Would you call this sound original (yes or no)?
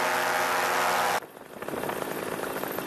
yes